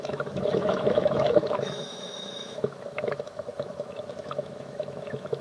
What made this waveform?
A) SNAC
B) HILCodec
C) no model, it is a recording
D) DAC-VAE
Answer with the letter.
D